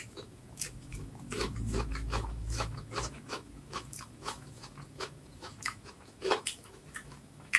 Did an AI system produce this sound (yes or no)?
yes